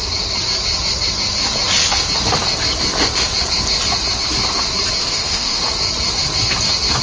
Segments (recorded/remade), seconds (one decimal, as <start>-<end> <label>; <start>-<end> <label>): 0.0-5.0 recorded; 5.0-5.6 remade; 5.6-7.0 recorded

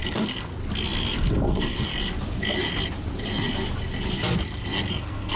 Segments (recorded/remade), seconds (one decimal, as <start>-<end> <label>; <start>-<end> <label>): 0.0-0.5 remade; 0.5-1.0 recorded; 1.0-1.9 remade; 1.9-4.9 recorded; 4.9-5.4 remade

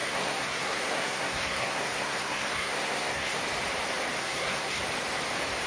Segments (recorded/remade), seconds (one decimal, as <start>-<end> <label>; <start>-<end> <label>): 0.0-3.4 remade; 3.4-4.2 recorded; 4.2-4.8 remade; 4.8-5.7 recorded

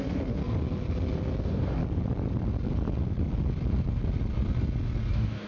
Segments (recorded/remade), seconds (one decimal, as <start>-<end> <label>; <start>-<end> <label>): 0.0-0.4 remade; 0.4-1.4 recorded; 1.4-1.8 remade; 1.8-5.1 recorded; 5.1-5.5 remade

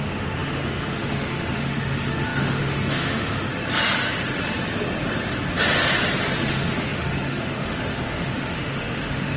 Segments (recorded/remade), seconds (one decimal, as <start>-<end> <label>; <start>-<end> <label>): 0.0-3.5 remade; 3.5-6.4 recorded; 6.4-9.4 remade

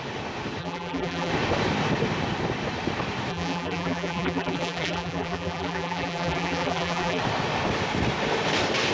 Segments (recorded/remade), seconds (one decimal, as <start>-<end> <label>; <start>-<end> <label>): 0.0-0.6 recorded; 0.6-1.3 remade; 1.3-3.3 recorded; 3.3-7.2 remade; 7.2-8.9 recorded